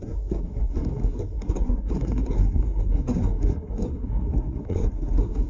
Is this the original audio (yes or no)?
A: no